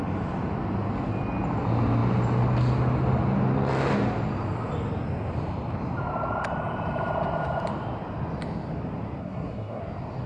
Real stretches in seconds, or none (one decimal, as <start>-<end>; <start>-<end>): 0.0-9.2; 9.8-10.3